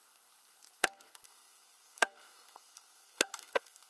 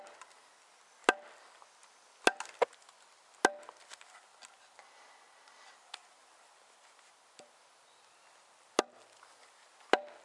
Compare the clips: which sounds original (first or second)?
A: second